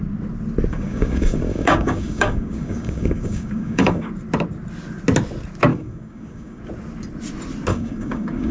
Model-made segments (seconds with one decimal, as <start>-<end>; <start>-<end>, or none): 0.7-4.1; 5.7-6.6; 7.7-8.5